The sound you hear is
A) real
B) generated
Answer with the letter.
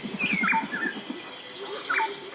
A